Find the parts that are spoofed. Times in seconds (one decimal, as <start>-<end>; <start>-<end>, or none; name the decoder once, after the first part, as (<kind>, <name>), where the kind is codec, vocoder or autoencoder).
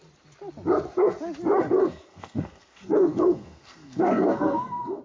1.8-5.0 (codec, SNAC)